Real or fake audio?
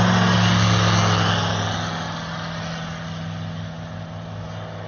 real